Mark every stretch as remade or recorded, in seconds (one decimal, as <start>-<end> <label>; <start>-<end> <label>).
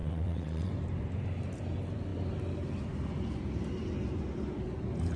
0.0-0.7 remade; 0.7-5.2 recorded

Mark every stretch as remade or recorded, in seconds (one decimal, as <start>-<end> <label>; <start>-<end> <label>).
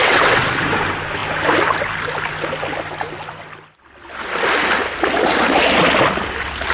0.0-0.6 remade; 0.6-6.7 recorded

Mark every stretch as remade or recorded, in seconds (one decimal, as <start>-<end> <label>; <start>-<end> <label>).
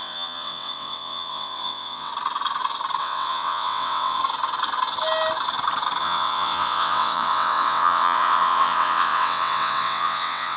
0.0-2.1 remade; 2.1-3.0 recorded; 3.0-4.2 remade; 4.2-6.0 recorded; 6.0-10.6 remade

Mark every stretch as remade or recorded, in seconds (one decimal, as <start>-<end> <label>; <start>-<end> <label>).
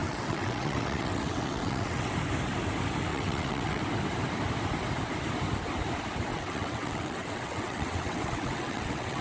0.0-2.1 remade; 2.1-3.1 recorded; 3.1-3.8 remade; 3.8-6.3 recorded; 6.3-9.2 remade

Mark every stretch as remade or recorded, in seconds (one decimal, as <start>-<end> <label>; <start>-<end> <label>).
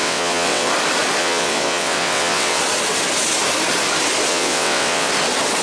0.0-0.7 remade; 0.7-1.2 recorded; 1.2-2.6 remade; 2.6-4.3 recorded; 4.3-5.1 remade; 5.1-5.6 recorded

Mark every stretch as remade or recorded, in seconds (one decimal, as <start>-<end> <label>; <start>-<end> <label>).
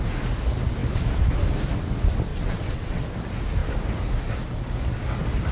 0.0-2.3 recorded; 2.3-3.0 remade; 3.0-5.5 recorded